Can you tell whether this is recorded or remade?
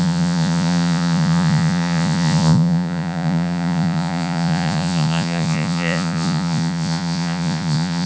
remade